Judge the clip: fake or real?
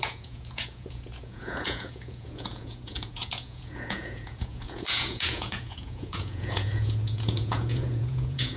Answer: fake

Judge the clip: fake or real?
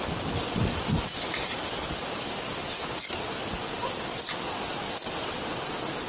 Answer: real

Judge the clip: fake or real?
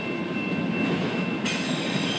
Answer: real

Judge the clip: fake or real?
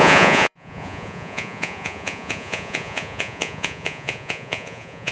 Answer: fake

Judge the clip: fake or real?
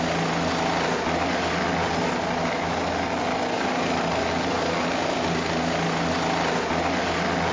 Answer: real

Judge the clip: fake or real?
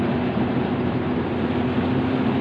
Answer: real